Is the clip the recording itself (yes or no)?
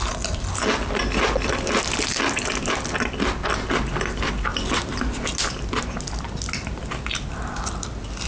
yes